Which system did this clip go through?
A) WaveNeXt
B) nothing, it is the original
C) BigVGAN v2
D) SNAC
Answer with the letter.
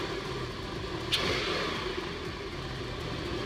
B